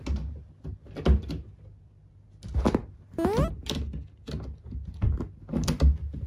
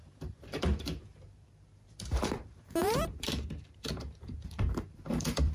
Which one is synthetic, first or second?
second